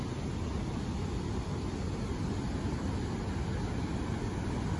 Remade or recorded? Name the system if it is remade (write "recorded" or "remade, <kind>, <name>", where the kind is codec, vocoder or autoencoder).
recorded